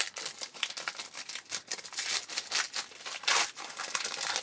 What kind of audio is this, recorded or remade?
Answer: recorded